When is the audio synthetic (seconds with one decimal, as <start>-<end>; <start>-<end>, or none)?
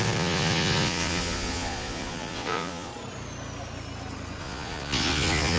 0.0-2.9; 4.4-5.6